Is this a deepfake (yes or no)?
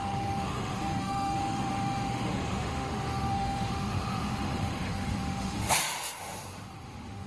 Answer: yes